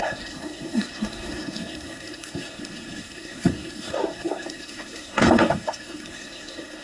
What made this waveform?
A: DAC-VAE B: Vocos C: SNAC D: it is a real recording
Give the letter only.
C